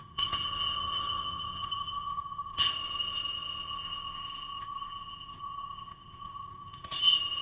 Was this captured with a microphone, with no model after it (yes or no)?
no